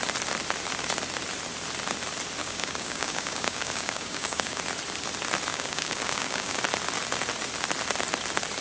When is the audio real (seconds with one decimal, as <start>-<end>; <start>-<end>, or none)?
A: 0.0-2.4; 4.6-5.5; 6.6-8.6